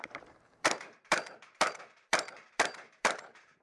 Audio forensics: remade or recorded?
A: remade